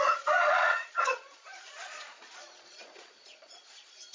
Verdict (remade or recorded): remade